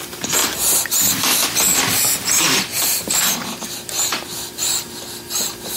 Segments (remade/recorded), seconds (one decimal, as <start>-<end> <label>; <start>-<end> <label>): 0.0-0.4 recorded; 0.4-1.0 remade; 1.0-2.7 recorded; 2.7-5.8 remade